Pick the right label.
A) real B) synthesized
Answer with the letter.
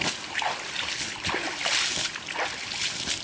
A